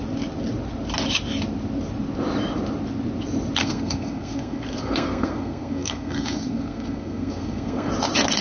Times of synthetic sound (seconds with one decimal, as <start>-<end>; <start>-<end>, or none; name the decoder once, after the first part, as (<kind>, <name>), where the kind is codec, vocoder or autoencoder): 3.6-7.9 (codec, SNAC)